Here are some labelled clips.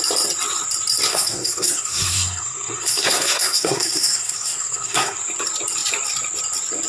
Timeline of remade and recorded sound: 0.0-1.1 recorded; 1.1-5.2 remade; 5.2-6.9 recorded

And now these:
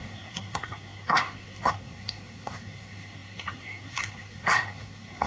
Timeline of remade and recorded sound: 0.0-5.3 remade

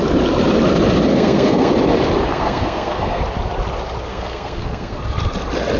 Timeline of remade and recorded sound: 0.0-1.1 recorded; 1.1-1.7 remade; 1.7-2.3 recorded; 2.3-3.2 remade; 3.2-4.1 recorded; 4.1-5.0 remade; 5.0-5.8 recorded

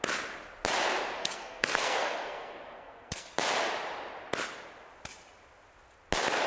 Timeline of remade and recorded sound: 0.0-1.2 recorded; 1.2-3.3 remade; 3.3-6.5 recorded

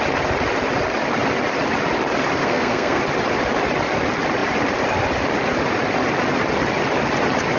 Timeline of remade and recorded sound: 0.0-2.4 recorded; 2.4-3.0 remade; 3.0-7.6 recorded

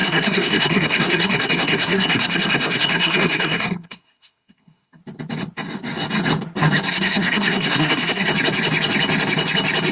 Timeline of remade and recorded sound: 0.0-5.0 remade; 5.0-6.9 recorded; 6.9-8.3 remade; 8.3-9.9 recorded